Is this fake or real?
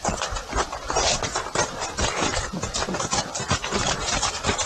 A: real